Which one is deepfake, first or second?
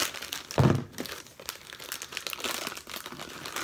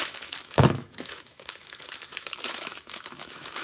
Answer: second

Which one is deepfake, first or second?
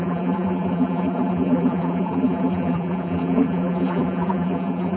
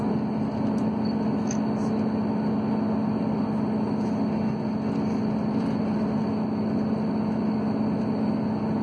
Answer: first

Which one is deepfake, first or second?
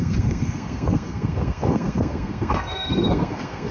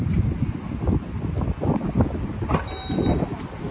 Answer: first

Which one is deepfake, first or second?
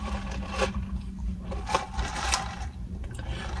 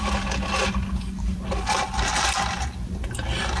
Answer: first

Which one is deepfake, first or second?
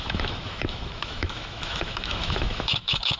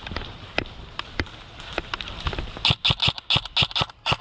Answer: first